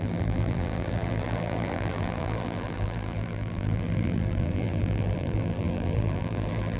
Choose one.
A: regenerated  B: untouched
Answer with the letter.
A